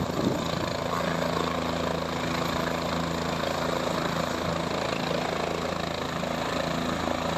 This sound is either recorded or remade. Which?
recorded